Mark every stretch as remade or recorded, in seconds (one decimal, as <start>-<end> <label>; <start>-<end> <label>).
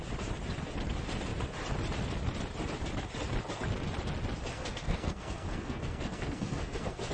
0.0-4.5 recorded; 4.5-7.1 remade